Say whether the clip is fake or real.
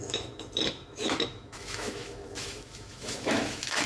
fake